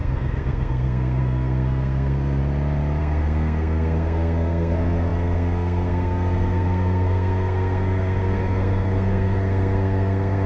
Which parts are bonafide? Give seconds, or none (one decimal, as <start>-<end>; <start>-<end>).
2.4-3.0